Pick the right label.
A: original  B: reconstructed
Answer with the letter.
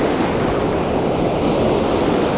A